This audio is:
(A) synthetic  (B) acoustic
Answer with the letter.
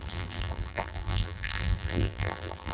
A